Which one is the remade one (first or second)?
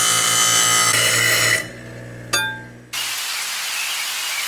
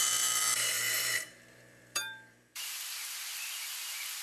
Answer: second